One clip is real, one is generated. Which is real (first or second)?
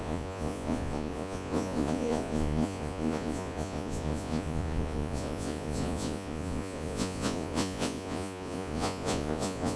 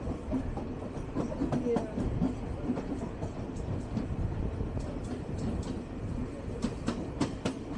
second